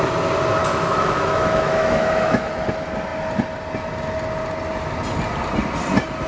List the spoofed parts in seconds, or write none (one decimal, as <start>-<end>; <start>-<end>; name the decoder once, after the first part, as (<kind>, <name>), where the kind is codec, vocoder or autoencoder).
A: 0.6-2.5 (autoencoder, DAC-VAE)